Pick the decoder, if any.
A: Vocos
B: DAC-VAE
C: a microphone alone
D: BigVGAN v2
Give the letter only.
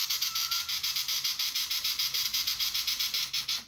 D